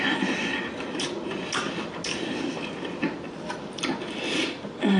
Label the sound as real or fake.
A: real